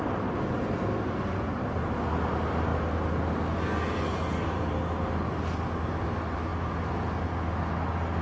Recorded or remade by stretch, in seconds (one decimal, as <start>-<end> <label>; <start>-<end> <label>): 0.0-8.2 recorded